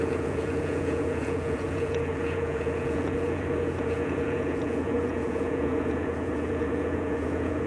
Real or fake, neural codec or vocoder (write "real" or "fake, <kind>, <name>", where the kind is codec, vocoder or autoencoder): fake, vocoder, Vocos